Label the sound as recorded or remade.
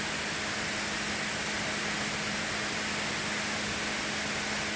recorded